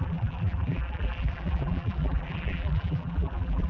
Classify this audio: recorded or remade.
remade